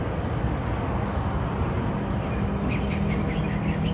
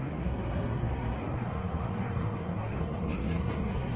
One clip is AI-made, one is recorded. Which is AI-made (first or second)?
second